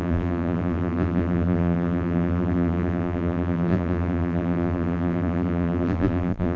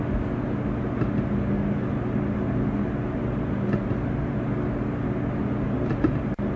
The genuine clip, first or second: second